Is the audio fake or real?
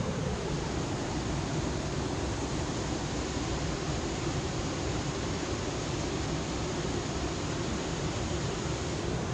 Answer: real